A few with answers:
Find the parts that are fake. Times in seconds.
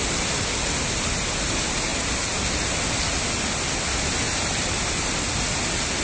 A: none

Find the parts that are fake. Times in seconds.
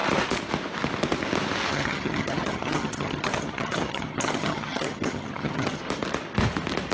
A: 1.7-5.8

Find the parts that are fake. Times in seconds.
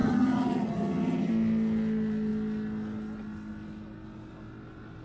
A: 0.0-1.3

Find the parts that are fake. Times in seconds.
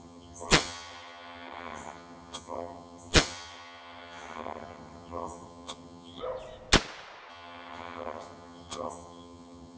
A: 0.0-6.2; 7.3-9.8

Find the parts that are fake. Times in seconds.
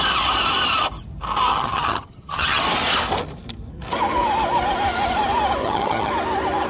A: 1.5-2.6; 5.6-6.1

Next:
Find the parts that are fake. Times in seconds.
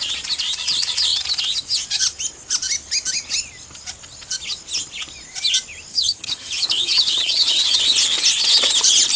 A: 5.9-7.8